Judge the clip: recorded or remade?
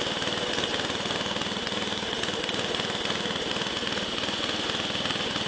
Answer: recorded